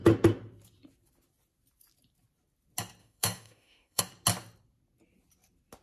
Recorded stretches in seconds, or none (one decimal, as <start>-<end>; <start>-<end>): 0.0-3.0; 4.0-5.8